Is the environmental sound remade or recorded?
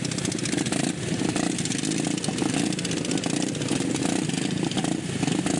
recorded